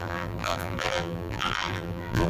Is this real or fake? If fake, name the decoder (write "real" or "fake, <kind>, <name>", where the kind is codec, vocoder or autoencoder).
fake, vocoder, BigVGAN v2